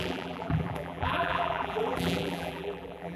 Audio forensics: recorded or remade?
remade